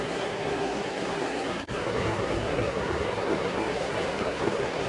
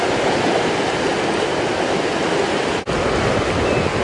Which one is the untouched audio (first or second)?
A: second